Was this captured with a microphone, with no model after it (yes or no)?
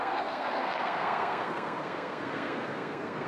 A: no